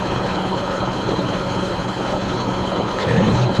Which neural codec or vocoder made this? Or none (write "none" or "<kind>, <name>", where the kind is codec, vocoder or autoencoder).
codec, HILCodec